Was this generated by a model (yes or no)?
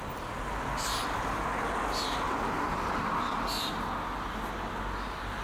no